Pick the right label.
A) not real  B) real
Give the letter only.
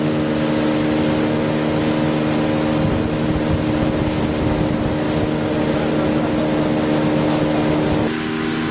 B